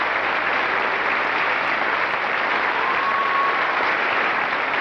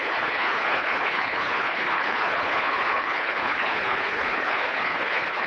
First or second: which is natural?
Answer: first